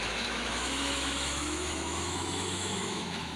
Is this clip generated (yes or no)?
yes